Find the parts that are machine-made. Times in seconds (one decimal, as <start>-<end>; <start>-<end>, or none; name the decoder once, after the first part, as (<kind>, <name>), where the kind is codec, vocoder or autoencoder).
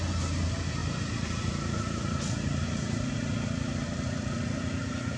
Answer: 0.8-3.1 (vocoder, BigVGAN v2)